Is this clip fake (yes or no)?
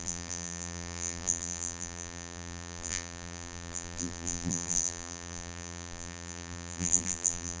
yes